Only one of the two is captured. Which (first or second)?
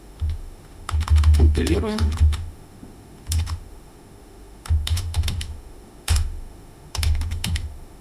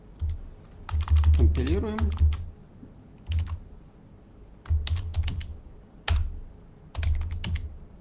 second